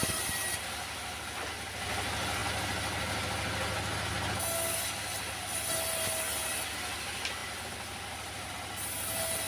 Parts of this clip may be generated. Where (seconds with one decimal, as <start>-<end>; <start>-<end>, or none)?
none